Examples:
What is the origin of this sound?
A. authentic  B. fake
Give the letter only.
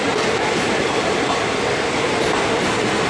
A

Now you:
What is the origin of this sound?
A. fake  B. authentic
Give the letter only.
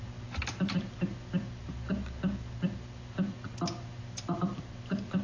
B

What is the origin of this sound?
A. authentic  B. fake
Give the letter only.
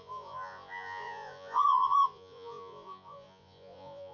B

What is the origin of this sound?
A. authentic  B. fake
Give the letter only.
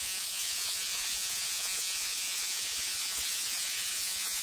B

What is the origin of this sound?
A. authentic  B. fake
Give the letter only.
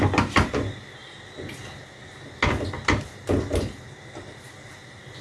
A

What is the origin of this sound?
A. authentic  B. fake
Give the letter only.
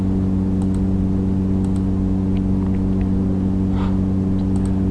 A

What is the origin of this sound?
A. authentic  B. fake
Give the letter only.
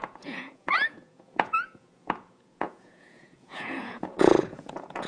B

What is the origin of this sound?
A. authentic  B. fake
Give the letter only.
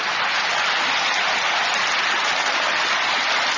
A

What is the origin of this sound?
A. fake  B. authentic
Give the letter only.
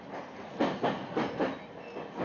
B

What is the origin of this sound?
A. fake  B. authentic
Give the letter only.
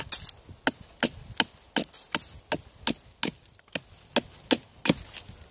B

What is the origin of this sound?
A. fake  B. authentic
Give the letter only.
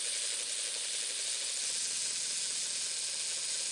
B